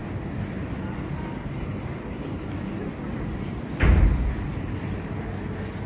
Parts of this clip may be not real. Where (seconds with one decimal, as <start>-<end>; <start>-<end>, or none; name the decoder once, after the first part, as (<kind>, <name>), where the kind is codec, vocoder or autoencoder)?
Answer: 0.0-1.3 (vocoder, BigVGAN v2)